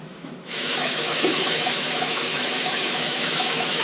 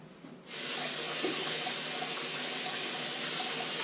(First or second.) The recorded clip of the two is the second